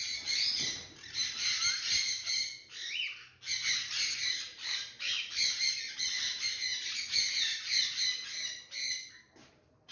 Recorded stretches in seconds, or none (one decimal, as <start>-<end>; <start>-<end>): 2.4-3.7